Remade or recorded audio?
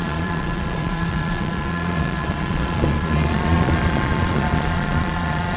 remade